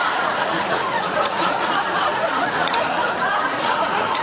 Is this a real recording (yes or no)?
no